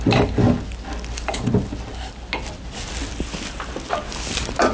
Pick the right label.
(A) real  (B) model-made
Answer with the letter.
A